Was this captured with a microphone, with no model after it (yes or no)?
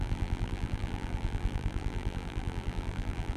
no